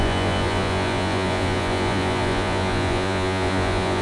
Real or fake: fake